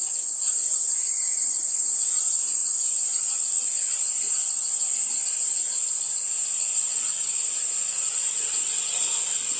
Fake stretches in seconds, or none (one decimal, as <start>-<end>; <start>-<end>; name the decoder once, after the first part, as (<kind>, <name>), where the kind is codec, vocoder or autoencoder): none